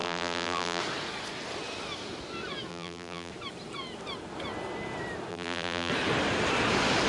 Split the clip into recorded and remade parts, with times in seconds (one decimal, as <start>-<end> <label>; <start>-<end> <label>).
0.0-0.8 remade; 0.8-2.7 recorded; 2.7-3.3 remade; 3.3-5.3 recorded; 5.3-5.9 remade; 5.9-7.1 recorded